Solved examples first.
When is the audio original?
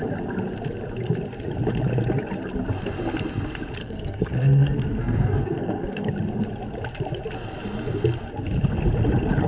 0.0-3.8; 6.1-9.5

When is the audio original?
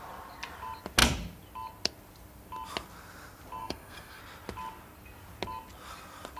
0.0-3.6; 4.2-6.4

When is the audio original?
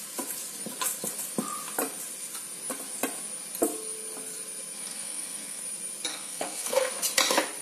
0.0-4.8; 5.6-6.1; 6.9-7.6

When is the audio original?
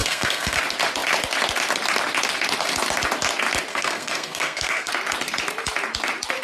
0.6-3.7; 4.9-6.4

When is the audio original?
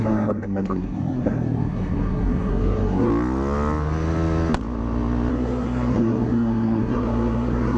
3.1-5.3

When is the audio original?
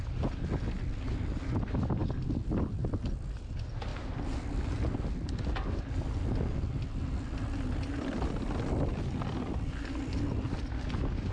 0.0-11.3